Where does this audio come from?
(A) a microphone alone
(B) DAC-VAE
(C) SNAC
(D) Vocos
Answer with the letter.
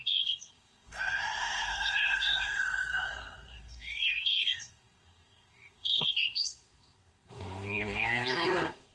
C